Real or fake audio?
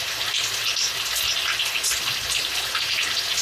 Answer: real